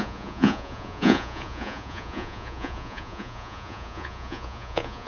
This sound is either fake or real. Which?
fake